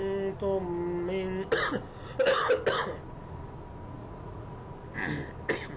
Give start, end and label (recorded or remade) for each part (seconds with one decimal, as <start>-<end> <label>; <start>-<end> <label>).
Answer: 0.0-4.0 recorded; 4.0-4.7 remade; 4.7-5.8 recorded